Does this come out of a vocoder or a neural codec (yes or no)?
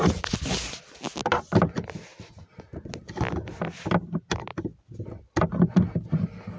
no